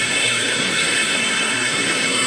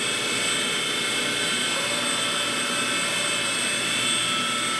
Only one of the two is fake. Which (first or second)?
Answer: first